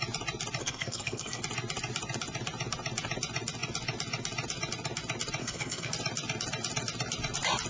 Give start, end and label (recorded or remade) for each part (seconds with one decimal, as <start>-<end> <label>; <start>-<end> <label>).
0.0-0.6 recorded; 0.6-1.4 remade; 1.4-5.4 recorded; 5.4-5.9 remade; 5.9-7.7 recorded

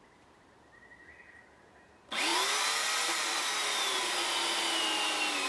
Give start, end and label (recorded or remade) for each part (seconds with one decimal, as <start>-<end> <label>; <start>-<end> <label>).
0.0-5.5 recorded

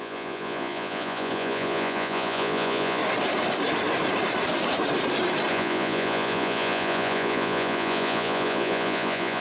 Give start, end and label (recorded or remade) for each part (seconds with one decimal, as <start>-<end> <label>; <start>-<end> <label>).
0.0-3.0 remade; 3.0-5.5 recorded; 5.5-9.4 remade

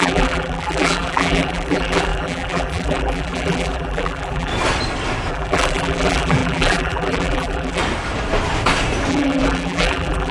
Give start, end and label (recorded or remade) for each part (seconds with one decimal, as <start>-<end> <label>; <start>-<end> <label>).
0.0-4.5 remade; 4.5-5.3 recorded; 5.3-7.8 remade; 7.8-9.1 recorded; 9.1-10.3 remade

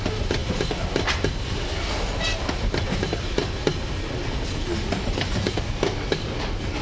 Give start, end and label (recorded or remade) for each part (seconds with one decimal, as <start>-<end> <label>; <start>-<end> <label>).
0.0-4.7 recorded; 4.7-6.8 remade